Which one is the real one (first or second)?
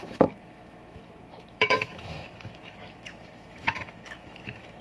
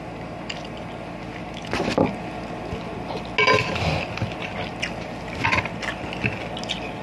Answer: second